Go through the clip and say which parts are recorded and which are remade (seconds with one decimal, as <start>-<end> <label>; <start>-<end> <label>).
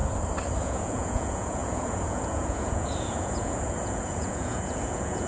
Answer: 0.0-0.6 recorded; 0.6-5.3 remade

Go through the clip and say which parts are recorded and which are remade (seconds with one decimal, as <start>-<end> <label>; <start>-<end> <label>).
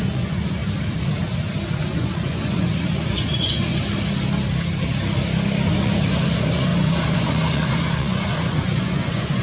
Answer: 0.0-0.6 remade; 0.6-1.8 recorded; 1.8-3.7 remade; 3.7-5.7 recorded; 5.7-9.4 remade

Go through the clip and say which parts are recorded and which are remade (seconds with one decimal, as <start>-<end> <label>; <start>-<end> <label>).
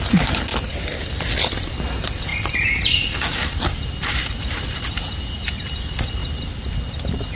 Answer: 0.0-7.4 recorded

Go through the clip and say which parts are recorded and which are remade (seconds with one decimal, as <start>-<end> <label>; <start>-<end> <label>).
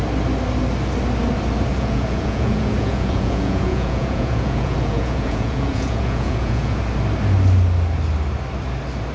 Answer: 0.0-1.7 recorded; 1.7-6.8 remade; 6.8-9.1 recorded